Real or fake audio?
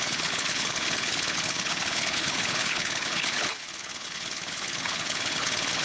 fake